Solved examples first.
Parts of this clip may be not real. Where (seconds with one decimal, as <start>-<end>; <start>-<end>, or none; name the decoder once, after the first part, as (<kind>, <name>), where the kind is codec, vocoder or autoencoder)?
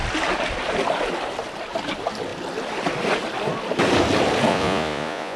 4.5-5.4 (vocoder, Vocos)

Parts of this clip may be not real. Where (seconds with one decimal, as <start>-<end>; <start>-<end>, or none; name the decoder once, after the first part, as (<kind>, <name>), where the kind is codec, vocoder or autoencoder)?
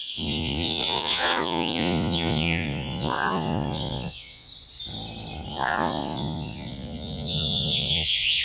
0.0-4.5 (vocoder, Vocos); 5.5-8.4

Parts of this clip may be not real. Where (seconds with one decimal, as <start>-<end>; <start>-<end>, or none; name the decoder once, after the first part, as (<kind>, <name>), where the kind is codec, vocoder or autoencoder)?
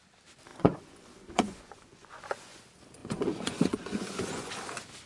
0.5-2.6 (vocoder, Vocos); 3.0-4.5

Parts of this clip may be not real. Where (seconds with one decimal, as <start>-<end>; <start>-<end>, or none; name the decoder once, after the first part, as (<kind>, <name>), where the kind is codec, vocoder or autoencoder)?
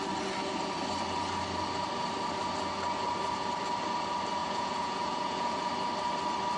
4.4-5.7 (vocoder, Vocos)